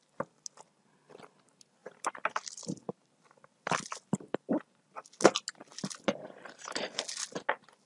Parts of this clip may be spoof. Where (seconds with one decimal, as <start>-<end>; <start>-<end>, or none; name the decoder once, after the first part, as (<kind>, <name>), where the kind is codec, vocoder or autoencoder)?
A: 1.8-4.5 (vocoder, BigVGAN v2)